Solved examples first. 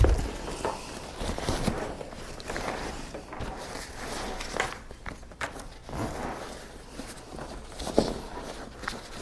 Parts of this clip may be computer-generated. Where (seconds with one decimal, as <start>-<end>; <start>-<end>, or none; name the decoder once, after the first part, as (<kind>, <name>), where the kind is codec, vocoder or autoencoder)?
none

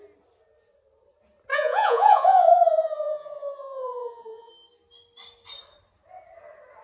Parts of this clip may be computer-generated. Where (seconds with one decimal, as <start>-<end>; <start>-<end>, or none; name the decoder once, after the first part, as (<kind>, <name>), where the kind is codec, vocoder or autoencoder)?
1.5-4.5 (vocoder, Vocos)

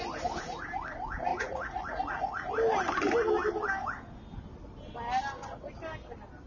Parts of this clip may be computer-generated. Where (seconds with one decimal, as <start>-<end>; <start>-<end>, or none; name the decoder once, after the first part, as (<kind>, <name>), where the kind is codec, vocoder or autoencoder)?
1.3-2.5 (vocoder, Vocos)

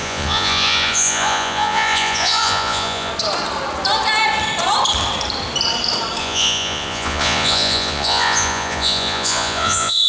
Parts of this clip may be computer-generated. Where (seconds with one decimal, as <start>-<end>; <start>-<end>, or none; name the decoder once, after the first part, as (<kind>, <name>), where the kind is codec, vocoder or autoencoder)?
0.0-3.1 (vocoder, Vocos); 6.2-10.1

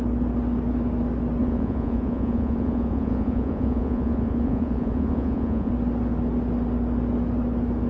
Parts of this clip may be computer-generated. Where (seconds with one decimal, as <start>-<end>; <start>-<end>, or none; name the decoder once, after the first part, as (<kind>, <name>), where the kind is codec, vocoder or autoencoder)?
1.4-5.7 (vocoder, Vocos)